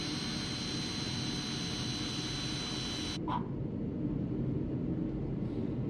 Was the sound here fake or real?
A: real